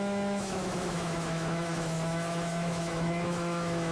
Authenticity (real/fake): fake